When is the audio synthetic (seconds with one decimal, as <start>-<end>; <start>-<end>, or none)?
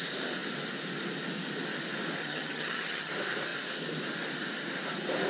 2.2-3.1